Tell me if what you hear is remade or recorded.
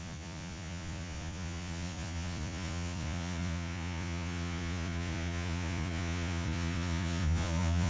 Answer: remade